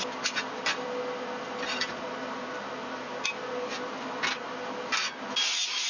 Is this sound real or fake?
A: real